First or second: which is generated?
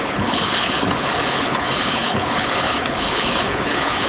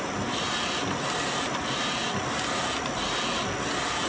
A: first